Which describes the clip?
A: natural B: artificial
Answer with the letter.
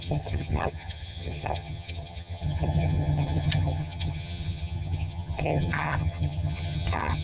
B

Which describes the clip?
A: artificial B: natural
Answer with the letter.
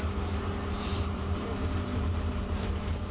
A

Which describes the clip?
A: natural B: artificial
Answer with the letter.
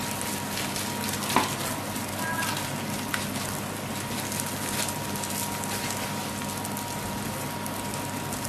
A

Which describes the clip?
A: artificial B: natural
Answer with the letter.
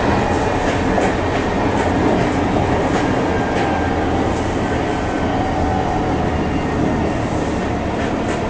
B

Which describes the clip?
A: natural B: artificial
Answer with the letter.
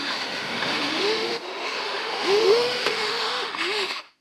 B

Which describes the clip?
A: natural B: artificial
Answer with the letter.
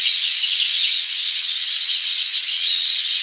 B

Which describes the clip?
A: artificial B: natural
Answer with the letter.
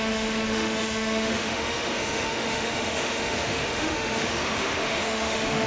A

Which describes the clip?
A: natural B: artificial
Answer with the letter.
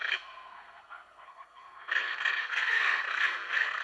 B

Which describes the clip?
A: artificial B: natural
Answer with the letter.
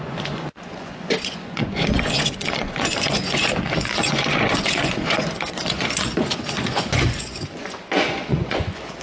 A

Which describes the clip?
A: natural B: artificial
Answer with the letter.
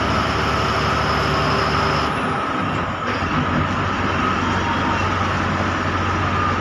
A